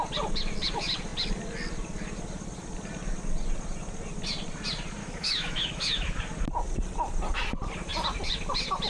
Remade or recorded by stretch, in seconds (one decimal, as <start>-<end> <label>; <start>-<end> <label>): 0.0-5.0 recorded; 5.0-6.2 remade; 6.2-8.9 recorded